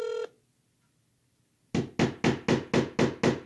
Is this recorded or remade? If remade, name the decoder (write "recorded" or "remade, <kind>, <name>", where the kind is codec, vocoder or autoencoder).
recorded